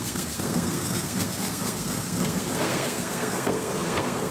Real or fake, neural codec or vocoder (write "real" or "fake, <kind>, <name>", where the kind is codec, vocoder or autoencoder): fake, codec, SNAC